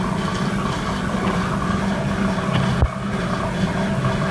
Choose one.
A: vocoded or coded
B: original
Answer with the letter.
B